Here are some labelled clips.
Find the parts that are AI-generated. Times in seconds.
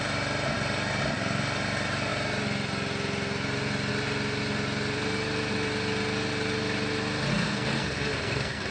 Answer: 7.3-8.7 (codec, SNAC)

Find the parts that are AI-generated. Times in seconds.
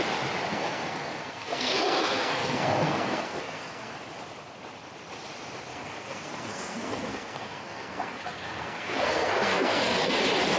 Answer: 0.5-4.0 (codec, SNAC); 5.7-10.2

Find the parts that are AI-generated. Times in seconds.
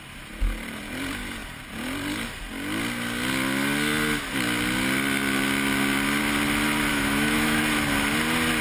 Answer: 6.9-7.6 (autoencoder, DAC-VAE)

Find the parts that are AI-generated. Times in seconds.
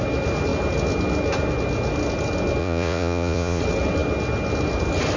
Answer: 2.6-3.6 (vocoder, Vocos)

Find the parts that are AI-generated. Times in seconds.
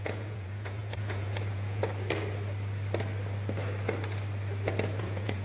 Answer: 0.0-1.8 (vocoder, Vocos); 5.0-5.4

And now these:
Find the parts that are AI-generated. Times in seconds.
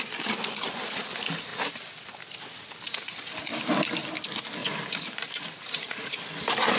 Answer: 4.6-6.0 (vocoder, BigVGAN v2)